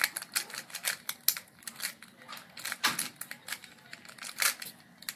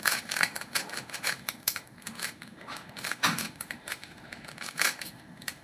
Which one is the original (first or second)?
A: first